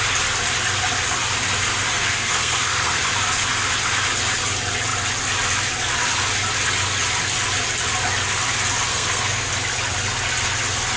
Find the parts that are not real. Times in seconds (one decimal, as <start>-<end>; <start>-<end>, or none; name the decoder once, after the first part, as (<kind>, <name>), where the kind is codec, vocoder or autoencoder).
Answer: 1.9-3.0 (codec, SNAC); 8.9-9.5